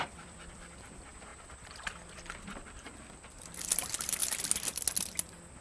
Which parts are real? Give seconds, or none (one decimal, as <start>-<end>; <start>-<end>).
1.3-2.6; 4.2-5.6